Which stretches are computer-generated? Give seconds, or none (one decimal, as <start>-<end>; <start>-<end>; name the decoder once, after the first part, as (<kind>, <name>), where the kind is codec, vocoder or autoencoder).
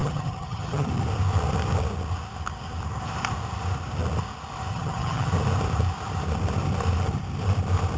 0.0-0.9 (vocoder, HiFi-GAN); 4.7-5.3